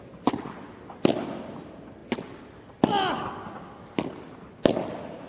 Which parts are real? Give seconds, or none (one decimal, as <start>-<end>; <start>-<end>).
0.0-5.3